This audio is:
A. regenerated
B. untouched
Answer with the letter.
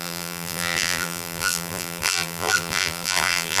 A